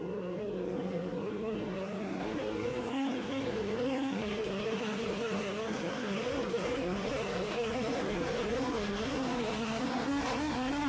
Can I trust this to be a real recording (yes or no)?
no